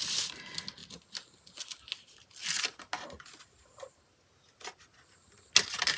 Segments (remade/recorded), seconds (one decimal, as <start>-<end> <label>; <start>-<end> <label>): 0.0-6.0 recorded